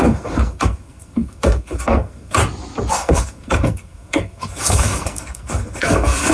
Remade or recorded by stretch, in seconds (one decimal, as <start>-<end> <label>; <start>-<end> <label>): 0.0-2.4 remade; 2.4-2.9 recorded; 2.9-6.3 remade